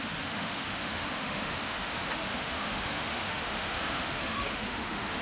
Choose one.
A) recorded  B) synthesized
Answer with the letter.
B